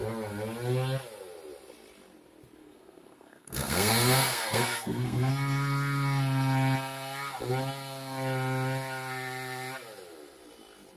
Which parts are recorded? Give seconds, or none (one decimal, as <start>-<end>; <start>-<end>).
0.0-2.6; 5.3-11.0